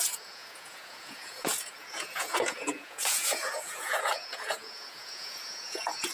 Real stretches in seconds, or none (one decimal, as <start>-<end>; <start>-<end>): none